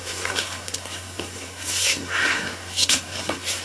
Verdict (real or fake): fake